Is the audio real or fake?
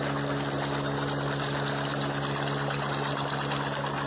real